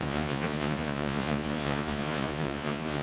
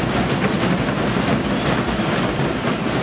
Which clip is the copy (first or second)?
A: first